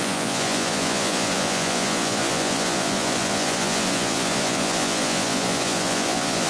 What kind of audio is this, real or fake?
fake